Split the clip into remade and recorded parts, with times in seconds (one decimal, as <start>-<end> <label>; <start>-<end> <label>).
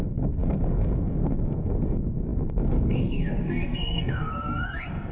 0.0-5.1 remade